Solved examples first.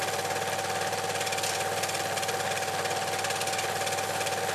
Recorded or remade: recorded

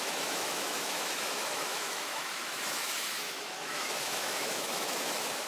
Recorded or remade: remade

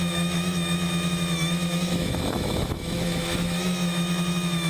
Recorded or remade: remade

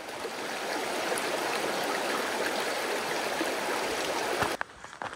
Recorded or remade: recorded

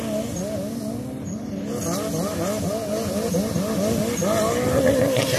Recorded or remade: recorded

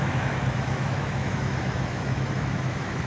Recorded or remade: remade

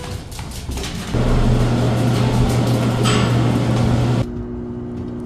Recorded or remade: recorded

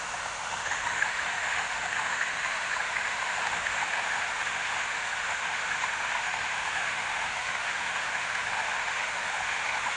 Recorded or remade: remade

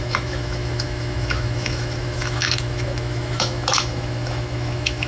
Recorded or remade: remade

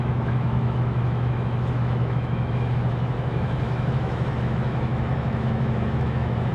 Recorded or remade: remade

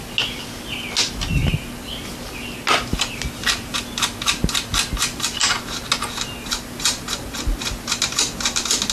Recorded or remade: recorded